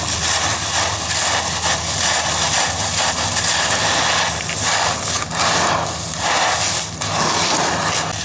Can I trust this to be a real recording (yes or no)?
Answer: yes